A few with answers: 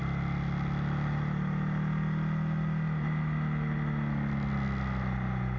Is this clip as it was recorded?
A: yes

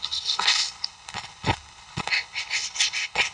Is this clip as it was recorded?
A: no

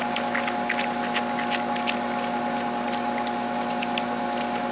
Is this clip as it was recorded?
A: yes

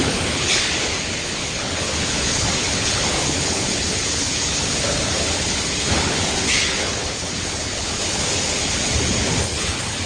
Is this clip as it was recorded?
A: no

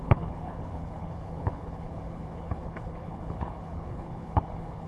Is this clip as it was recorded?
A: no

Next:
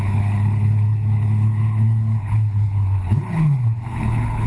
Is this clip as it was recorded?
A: no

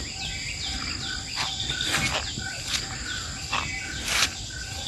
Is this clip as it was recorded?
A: yes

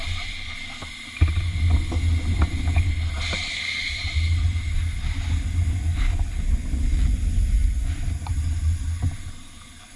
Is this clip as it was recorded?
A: yes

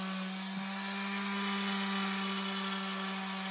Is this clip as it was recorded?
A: yes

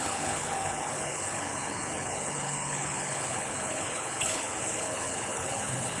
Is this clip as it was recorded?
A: no